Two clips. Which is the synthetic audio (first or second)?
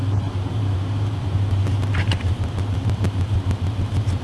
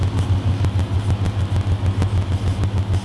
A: first